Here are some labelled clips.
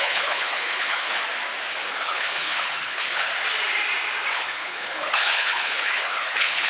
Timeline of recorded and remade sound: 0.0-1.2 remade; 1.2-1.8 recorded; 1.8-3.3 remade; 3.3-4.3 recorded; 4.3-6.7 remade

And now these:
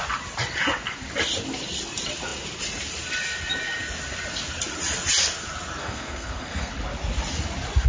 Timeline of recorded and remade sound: 0.0-5.8 recorded; 5.8-6.7 remade; 6.7-7.9 recorded

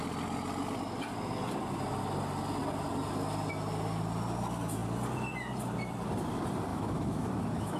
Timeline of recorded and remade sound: 0.0-6.7 recorded; 6.7-7.8 remade

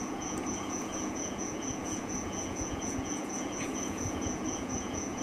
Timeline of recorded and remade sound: 0.0-5.2 remade

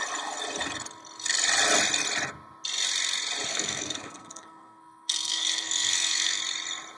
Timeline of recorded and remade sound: 0.0-3.5 recorded; 3.5-6.4 remade; 6.4-7.0 recorded

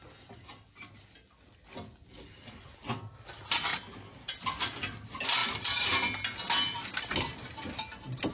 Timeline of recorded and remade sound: 0.0-8.3 recorded

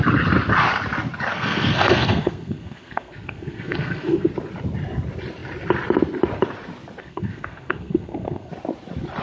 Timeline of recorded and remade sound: 0.0-1.3 recorded; 1.3-4.3 remade; 4.3-7.0 recorded; 7.0-8.5 remade; 8.5-9.2 recorded